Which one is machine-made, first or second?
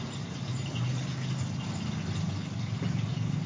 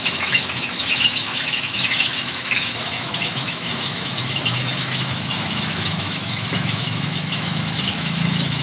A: second